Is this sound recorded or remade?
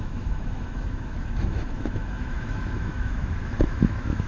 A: remade